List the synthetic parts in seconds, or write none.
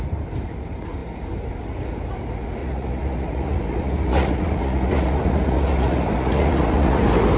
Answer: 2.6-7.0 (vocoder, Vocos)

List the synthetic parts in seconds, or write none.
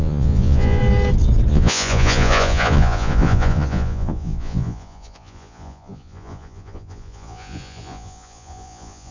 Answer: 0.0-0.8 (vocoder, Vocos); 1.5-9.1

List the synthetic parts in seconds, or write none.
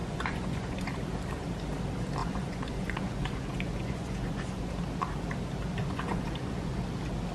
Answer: 0.0-0.9 (vocoder, Vocos); 2.2-4.7; 5.8-6.8